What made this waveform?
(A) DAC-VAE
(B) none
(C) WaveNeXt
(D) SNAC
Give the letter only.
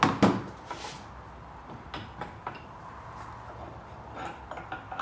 B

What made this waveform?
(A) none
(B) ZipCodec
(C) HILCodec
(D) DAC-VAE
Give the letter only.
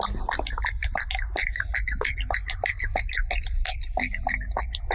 A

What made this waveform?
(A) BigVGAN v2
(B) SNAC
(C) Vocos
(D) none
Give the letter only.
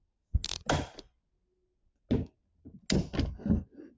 D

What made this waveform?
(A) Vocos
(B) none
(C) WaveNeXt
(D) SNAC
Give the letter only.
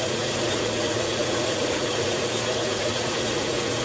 A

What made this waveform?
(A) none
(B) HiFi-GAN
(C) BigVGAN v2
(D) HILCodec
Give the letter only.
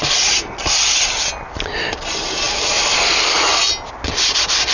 A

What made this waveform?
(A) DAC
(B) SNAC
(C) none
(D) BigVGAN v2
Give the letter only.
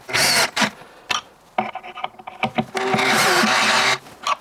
C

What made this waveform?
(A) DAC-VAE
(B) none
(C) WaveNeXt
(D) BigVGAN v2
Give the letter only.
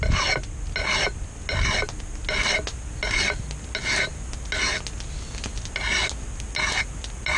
B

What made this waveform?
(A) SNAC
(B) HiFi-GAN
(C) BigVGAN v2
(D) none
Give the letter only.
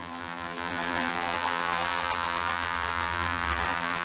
C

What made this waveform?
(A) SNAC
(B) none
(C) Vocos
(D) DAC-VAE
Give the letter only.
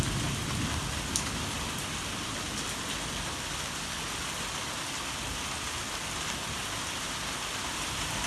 B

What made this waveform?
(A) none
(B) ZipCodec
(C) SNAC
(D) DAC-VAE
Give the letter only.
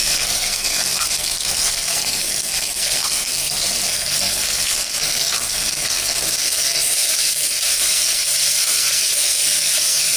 C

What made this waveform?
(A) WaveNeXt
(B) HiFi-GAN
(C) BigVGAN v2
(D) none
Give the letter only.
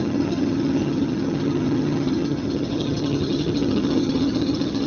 B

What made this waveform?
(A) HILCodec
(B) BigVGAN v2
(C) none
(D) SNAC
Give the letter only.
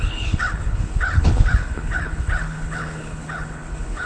A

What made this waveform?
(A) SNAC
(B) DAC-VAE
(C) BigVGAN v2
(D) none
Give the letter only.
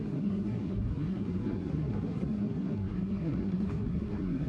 A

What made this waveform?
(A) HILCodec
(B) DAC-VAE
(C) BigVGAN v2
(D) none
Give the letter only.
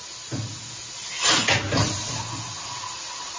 D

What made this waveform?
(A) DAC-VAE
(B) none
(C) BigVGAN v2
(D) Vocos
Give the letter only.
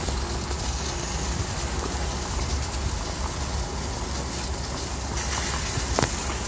B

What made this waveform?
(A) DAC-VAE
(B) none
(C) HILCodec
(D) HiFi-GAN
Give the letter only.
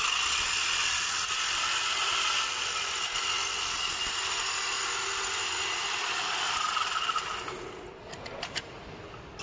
B